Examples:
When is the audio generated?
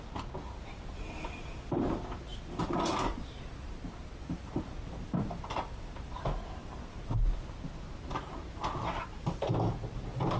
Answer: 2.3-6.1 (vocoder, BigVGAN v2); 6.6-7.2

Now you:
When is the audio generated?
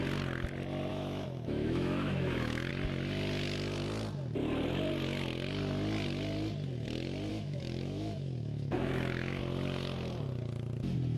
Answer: 0.9-2.7 (autoencoder, DAC-VAE); 7.3-9.4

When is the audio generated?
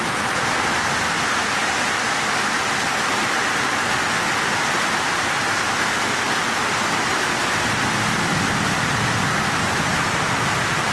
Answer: none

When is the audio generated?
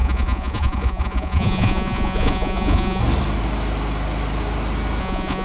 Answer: 0.0-3.0 (vocoder, Vocos); 5.0-5.4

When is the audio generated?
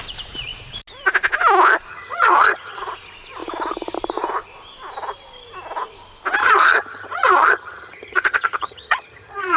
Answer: 1.9-2.8 (vocoder, HiFi-GAN); 6.4-9.6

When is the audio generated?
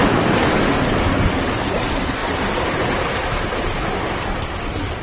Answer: 2.2-4.6 (vocoder, BigVGAN v2)